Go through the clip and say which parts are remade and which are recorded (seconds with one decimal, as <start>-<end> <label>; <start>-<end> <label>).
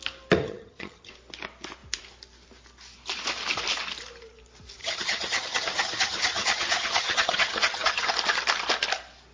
0.0-0.4 recorded; 0.4-1.1 remade; 1.1-4.8 recorded; 4.8-8.1 remade; 8.1-9.3 recorded